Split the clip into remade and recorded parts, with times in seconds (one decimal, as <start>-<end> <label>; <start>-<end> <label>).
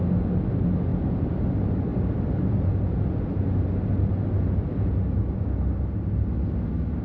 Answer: 0.0-7.0 recorded